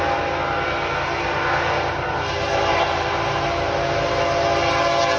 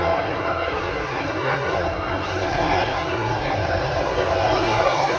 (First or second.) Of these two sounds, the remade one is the second